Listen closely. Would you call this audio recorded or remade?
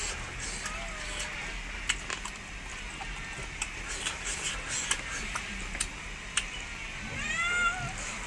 recorded